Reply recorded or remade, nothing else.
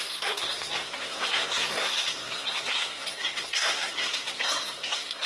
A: remade